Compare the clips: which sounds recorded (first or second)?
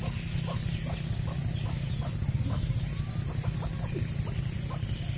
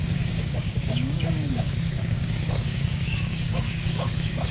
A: first